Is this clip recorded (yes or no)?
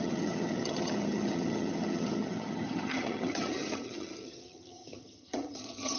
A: no